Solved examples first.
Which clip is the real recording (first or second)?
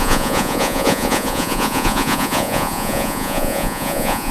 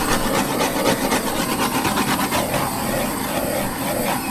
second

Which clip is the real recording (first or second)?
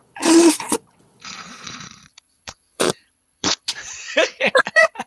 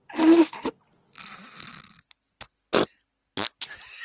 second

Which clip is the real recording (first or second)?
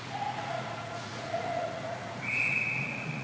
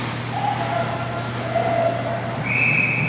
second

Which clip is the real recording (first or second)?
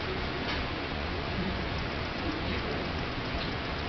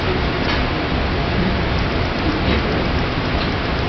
second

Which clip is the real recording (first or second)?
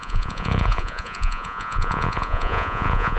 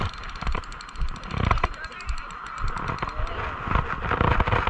second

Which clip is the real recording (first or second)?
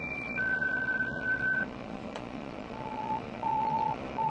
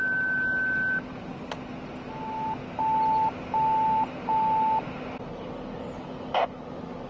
second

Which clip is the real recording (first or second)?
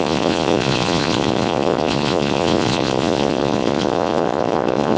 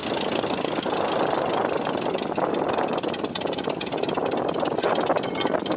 second